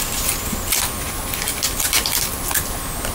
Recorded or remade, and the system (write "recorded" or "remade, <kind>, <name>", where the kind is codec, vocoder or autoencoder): recorded